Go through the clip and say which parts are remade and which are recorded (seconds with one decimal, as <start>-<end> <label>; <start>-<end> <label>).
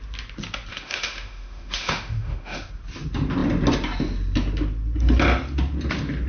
0.0-0.7 recorded; 0.7-2.7 remade; 2.7-6.3 recorded